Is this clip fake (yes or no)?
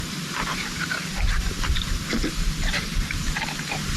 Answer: yes